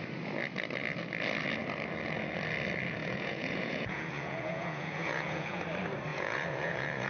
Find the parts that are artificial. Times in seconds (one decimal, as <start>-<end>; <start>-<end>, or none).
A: 3.0-5.6; 6.1-7.1